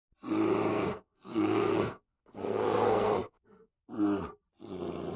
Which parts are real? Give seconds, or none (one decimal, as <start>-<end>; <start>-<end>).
0.0-0.7; 3.8-5.2